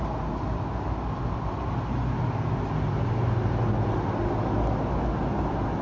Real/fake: real